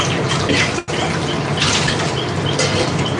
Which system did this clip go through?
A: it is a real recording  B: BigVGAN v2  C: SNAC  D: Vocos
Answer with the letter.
A